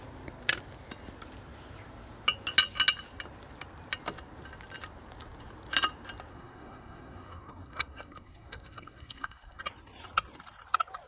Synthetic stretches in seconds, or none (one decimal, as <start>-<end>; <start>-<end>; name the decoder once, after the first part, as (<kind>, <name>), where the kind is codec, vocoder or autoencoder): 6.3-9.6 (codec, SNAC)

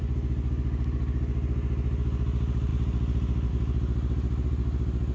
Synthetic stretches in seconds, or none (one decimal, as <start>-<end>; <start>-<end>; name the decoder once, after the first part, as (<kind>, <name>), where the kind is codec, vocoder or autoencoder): none

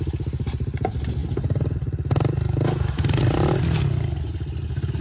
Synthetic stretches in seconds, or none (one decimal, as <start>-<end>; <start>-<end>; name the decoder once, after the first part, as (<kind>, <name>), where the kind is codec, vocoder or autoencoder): none

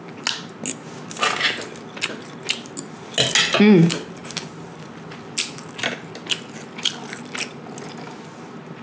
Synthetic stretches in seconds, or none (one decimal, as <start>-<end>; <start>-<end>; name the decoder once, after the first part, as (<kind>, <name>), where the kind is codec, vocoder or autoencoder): none

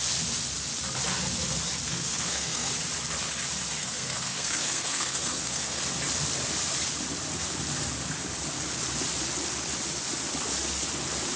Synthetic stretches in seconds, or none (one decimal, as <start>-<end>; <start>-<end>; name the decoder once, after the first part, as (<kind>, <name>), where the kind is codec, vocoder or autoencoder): 1.9-2.7 (codec, SNAC); 3.8-5.8

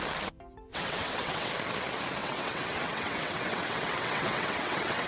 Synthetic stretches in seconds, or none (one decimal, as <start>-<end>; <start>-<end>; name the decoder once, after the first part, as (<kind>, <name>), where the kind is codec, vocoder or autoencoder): 0.7-1.5 (vocoder, WaveNeXt); 2.2-5.1